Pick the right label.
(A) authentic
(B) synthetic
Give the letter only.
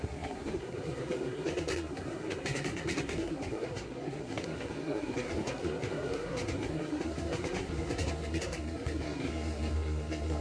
B